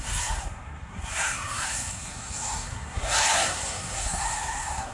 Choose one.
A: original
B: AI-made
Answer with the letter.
B